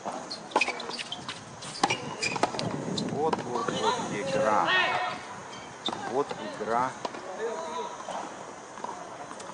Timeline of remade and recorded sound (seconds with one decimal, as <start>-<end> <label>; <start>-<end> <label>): 0.0-9.5 recorded